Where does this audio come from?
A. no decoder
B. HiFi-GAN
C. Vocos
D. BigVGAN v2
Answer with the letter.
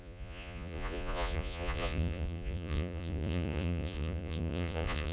C